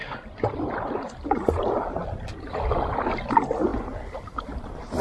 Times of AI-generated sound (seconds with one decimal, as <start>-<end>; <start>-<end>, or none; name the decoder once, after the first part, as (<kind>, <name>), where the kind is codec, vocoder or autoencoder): none